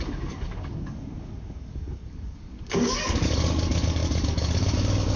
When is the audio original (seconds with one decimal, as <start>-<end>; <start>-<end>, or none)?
none